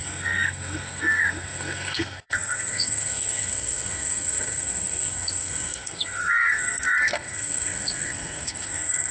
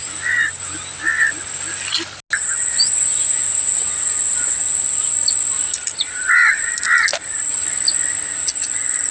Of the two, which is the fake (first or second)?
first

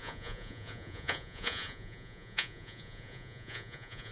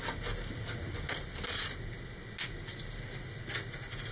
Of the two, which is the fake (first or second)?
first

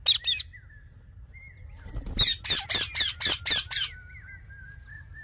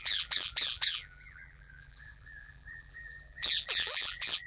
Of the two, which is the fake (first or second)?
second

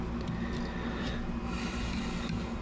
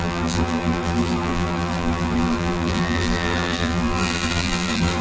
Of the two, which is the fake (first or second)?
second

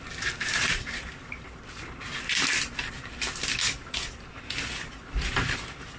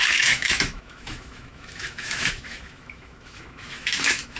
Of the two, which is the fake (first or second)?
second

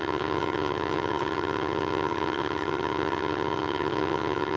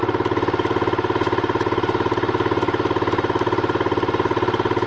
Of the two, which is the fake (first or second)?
first